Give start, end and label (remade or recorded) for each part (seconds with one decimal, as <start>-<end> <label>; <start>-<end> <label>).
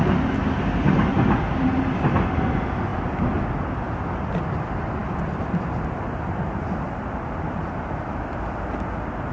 0.0-9.3 recorded